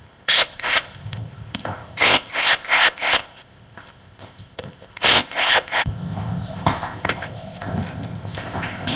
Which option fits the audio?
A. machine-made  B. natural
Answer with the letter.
A